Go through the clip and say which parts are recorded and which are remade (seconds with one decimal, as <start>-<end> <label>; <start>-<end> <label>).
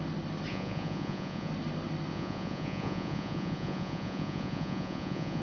0.0-0.5 recorded; 0.5-1.5 remade; 1.5-2.1 recorded; 2.1-5.4 remade